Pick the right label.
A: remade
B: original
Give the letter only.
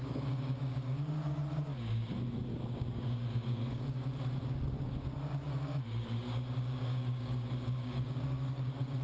A